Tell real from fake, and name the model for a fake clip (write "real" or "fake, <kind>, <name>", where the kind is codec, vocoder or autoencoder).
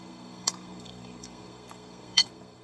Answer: fake, codec, SNAC